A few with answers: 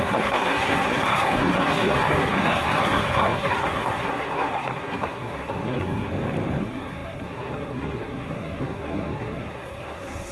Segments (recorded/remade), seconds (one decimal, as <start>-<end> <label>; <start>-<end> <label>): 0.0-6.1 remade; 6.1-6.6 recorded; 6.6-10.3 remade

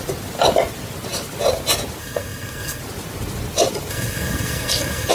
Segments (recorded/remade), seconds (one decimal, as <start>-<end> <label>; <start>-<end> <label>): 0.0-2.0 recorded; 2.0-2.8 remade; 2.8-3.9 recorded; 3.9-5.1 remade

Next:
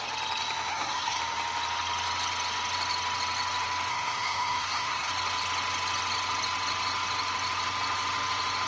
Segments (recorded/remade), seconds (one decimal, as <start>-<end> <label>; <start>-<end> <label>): 0.0-0.7 recorded; 0.7-1.2 remade; 1.2-3.9 recorded; 3.9-5.1 remade; 5.1-8.7 recorded

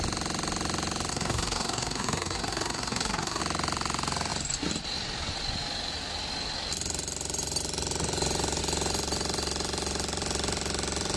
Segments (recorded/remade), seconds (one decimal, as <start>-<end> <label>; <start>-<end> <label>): 0.0-1.1 recorded; 1.1-3.4 remade; 3.4-11.2 recorded

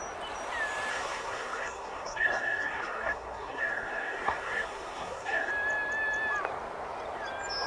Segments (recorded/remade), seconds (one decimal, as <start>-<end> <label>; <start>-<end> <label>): 0.0-0.9 recorded; 0.9-5.5 remade; 5.5-7.7 recorded

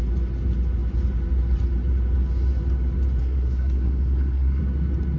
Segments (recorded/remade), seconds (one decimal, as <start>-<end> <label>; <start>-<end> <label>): 0.0-3.2 recorded; 3.2-4.6 remade; 4.6-5.2 recorded

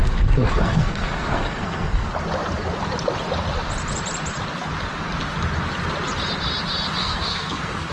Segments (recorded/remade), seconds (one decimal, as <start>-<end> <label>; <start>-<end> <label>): 0.0-2.1 remade; 2.1-7.0 recorded; 7.0-7.9 remade